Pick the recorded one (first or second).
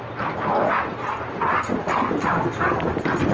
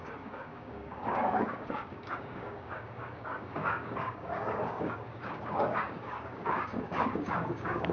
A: first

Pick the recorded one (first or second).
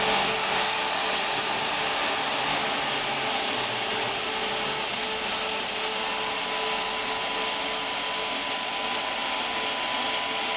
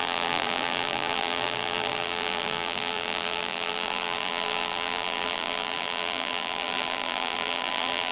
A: first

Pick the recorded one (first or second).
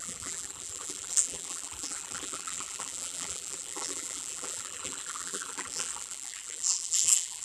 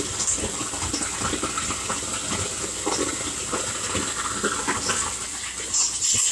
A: second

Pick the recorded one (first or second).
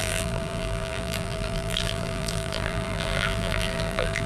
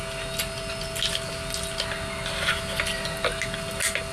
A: second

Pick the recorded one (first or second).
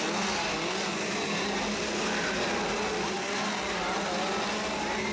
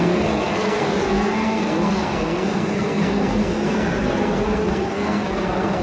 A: first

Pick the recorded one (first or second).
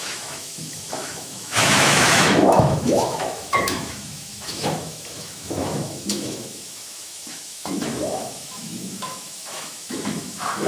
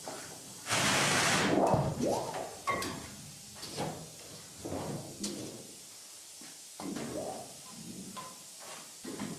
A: second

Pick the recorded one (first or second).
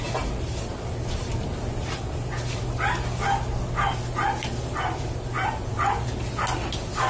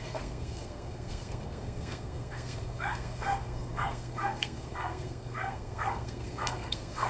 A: first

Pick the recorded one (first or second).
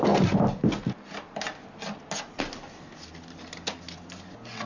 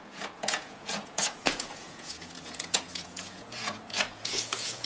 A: first